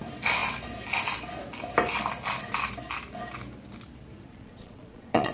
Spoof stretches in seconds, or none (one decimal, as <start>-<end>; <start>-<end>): 4.3-5.3